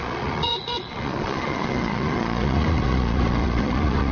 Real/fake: fake